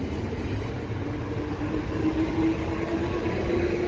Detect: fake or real fake